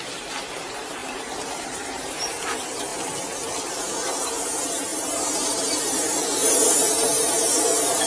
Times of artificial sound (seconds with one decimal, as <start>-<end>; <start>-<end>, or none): 0.0-2.9; 3.6-8.1